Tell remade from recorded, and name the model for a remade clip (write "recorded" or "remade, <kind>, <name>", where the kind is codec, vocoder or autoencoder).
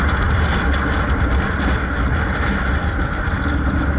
recorded